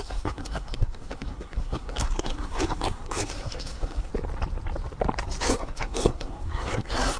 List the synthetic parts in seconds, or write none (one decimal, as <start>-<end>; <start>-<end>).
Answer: 0.0-4.1; 5.4-7.2